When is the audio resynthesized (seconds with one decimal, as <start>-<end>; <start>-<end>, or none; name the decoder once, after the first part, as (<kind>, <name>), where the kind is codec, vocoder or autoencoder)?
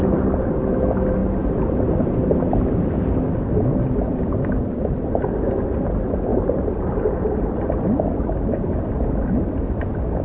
none